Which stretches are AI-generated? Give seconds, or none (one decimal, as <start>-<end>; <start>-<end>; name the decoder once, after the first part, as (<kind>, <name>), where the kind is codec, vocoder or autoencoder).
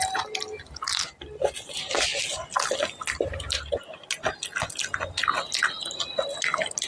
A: none